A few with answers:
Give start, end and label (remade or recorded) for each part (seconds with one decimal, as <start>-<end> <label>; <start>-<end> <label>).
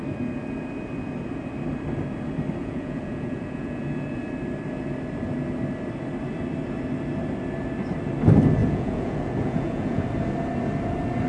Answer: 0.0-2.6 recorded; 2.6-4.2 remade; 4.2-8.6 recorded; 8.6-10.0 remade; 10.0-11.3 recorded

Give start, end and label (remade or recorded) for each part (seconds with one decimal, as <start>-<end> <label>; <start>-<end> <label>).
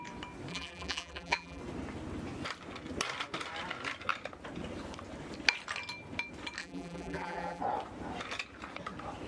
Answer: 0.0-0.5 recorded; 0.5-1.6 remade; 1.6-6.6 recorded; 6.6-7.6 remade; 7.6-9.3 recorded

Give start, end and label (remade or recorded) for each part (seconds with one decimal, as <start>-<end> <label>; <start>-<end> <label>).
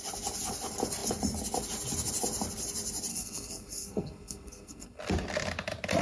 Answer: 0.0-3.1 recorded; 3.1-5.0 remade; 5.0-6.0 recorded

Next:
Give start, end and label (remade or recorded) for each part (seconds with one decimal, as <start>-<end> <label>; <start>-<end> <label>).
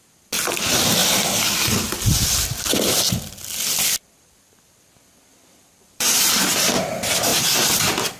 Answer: 0.0-5.3 recorded; 5.3-6.2 remade; 6.2-8.2 recorded